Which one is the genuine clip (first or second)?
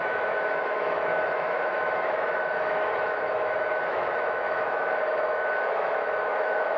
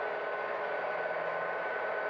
second